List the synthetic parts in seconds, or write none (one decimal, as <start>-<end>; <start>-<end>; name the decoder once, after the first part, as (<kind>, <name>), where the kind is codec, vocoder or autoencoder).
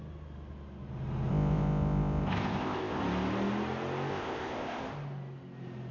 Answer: 1.3-3.0 (codec, ZipCodec); 4.1-4.8